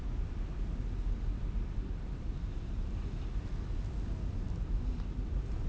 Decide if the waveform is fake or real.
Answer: real